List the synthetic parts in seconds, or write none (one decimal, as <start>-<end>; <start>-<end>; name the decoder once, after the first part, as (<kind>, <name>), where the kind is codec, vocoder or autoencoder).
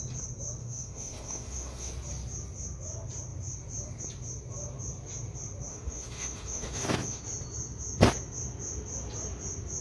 0.6-1.9 (autoencoder, DAC-VAE); 5.7-7.2